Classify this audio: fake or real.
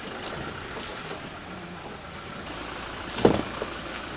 real